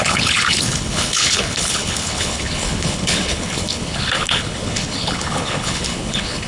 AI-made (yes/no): yes